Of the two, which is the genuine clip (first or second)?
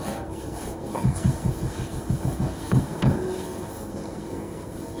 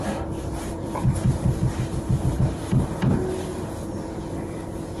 second